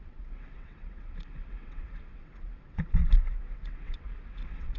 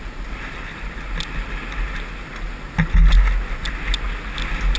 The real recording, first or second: second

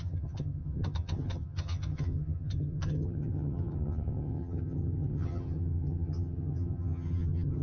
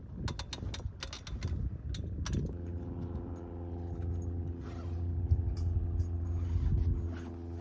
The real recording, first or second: second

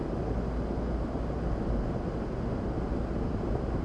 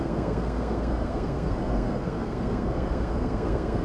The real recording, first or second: first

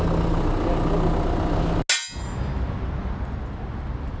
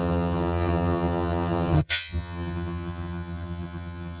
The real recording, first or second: first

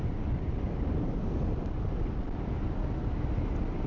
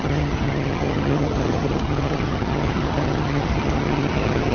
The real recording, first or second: first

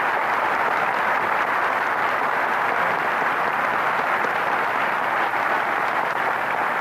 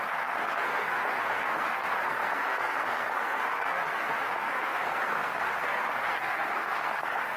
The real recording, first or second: first